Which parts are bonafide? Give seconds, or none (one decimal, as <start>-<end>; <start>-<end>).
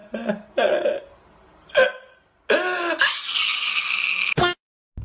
0.0-5.0